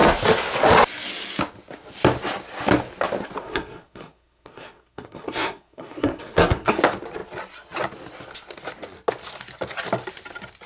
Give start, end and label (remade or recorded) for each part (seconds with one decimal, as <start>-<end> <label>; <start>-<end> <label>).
0.0-3.4 recorded; 3.4-6.8 remade; 6.8-10.7 recorded